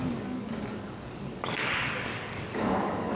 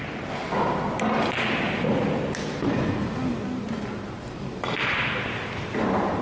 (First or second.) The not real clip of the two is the first